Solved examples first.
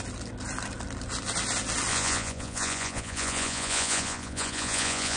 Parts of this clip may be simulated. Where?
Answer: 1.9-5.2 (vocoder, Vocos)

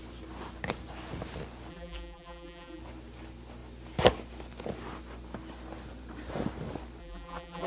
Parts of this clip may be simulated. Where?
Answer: 1.7-2.8 (vocoder, BigVGAN v2); 7.0-7.7